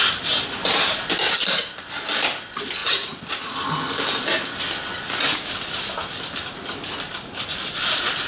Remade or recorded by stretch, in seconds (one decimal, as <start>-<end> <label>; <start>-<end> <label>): 0.0-8.3 recorded